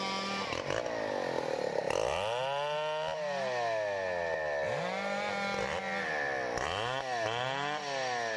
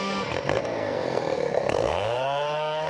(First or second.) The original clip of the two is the first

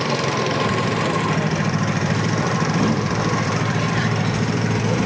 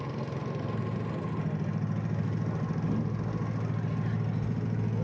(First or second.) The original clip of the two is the second